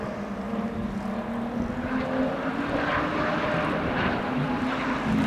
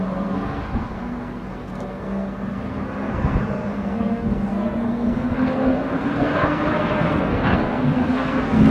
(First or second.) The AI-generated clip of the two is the second